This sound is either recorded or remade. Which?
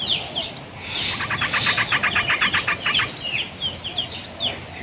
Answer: recorded